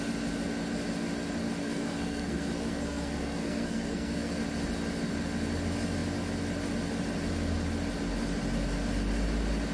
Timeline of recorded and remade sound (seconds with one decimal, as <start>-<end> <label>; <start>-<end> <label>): 0.0-1.6 recorded; 1.6-4.4 remade; 4.4-9.7 recorded